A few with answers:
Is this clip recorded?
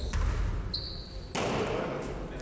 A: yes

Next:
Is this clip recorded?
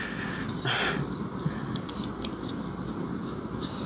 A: yes